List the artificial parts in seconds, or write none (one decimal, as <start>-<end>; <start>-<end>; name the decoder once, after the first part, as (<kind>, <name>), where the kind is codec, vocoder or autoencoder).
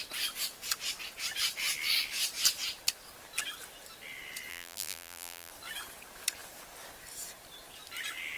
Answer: 4.5-5.5 (vocoder, BigVGAN v2)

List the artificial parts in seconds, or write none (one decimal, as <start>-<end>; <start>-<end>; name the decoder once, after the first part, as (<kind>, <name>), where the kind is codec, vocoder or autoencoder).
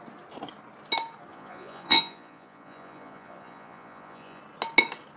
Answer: 1.3-4.4 (vocoder, Vocos)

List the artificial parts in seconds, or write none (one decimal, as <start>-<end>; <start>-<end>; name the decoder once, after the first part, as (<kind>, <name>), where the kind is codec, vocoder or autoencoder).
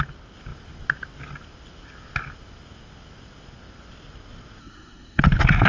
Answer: 4.6-5.2 (codec, SNAC)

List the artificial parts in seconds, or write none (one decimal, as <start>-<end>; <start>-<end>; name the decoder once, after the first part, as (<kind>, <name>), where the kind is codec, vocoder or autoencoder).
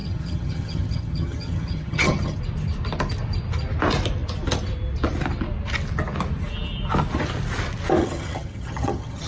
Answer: 0.0-2.4 (vocoder, HiFi-GAN); 8.0-9.3